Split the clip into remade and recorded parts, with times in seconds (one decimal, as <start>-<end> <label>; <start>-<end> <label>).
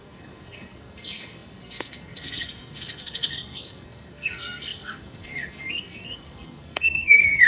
0.0-7.5 remade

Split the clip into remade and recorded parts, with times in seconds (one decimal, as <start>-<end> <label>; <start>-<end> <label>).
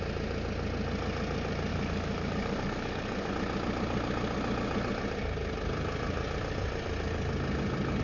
0.0-1.7 recorded; 1.7-3.3 remade; 3.3-8.0 recorded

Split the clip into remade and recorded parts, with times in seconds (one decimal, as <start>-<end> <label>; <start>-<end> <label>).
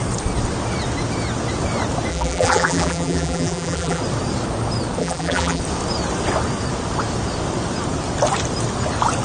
0.0-2.1 recorded; 2.1-4.0 remade; 4.0-5.0 recorded; 5.0-5.6 remade; 5.6-9.2 recorded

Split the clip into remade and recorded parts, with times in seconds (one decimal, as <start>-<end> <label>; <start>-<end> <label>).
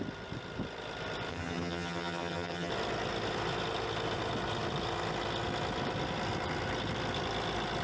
0.0-1.3 recorded; 1.3-2.7 remade; 2.7-7.8 recorded